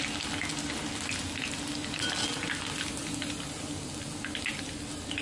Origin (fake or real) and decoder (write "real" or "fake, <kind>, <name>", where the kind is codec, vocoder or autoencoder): real